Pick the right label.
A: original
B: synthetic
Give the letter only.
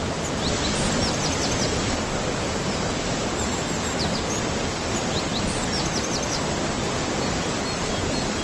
A